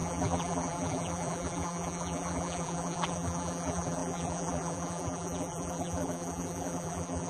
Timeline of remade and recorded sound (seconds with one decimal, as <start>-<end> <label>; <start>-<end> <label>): 0.0-7.3 remade